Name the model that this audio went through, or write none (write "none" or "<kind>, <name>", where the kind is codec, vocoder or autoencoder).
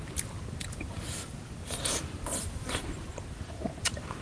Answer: vocoder, BigVGAN v2